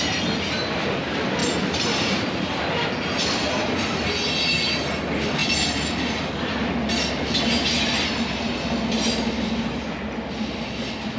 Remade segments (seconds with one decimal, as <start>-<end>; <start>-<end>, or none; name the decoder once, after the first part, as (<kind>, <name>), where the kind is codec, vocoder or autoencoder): none